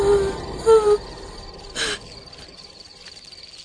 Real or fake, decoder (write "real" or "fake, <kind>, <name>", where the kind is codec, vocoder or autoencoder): real